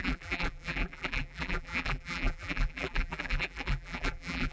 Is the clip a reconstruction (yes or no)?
yes